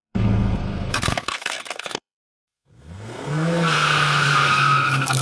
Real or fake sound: fake